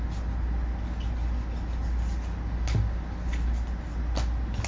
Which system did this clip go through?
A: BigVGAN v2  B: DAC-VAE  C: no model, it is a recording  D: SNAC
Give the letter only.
C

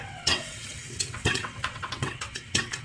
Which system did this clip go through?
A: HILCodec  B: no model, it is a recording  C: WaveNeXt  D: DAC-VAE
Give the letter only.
C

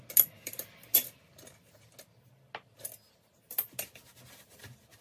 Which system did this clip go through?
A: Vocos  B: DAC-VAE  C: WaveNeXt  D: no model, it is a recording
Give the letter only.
D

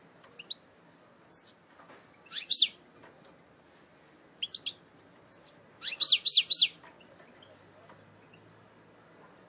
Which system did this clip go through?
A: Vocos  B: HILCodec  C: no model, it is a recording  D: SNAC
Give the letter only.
C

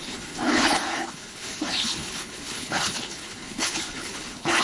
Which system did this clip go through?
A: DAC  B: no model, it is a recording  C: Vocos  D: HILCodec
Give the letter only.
D